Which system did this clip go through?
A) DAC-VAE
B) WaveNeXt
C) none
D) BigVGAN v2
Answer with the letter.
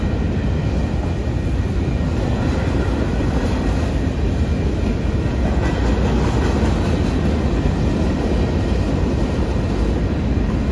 C